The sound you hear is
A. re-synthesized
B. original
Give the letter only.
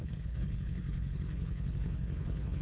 A